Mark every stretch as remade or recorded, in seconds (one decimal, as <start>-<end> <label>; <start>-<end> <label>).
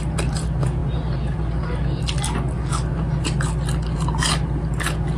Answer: 0.0-5.2 recorded